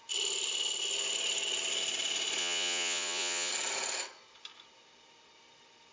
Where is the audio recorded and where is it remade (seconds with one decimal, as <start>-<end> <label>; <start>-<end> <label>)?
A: 0.0-2.4 recorded; 2.4-3.5 remade; 3.5-5.9 recorded